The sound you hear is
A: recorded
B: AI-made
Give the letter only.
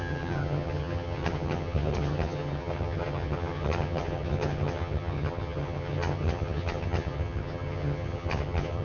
B